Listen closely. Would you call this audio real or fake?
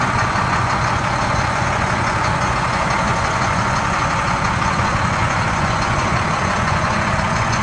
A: fake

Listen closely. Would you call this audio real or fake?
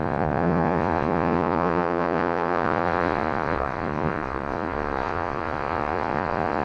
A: fake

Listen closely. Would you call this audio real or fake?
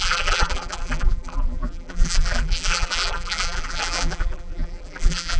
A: fake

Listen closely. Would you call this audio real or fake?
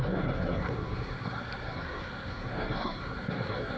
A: fake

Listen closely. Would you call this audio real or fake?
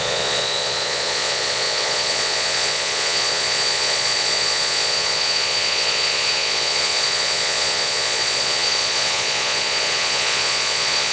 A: fake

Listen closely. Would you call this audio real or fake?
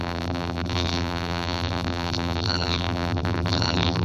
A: fake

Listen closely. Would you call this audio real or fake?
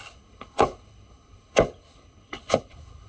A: fake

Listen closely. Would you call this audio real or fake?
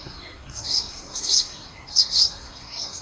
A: fake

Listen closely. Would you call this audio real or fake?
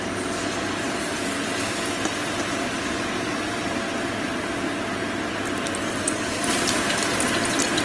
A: real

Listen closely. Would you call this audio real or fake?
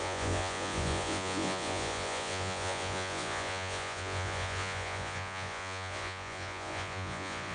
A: fake